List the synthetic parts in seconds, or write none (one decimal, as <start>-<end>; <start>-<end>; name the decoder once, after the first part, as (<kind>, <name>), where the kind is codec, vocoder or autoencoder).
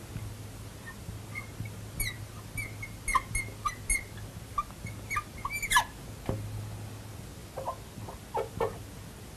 none